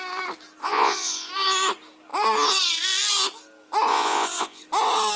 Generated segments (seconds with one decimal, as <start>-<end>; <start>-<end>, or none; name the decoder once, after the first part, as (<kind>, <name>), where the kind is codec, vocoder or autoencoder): 0.6-1.3 (vocoder, Vocos); 3.9-4.6